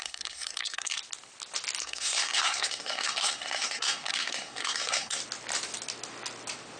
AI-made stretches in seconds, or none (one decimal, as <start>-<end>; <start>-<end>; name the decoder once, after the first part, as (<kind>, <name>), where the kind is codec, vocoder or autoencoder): 0.0-1.0 (codec, SNAC); 1.8-5.2